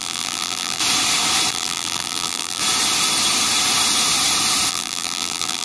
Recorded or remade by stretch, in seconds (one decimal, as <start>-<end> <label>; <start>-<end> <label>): 0.0-0.8 remade; 0.8-1.5 recorded; 1.5-2.6 remade; 2.6-4.7 recorded; 4.7-5.6 remade